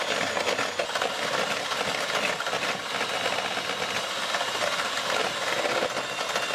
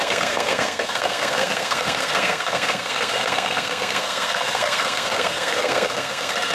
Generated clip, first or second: second